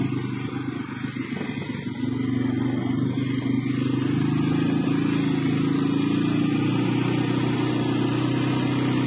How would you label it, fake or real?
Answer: real